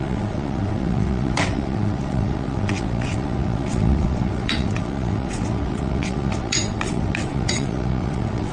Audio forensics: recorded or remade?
remade